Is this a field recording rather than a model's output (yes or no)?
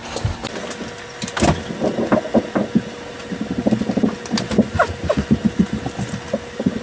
yes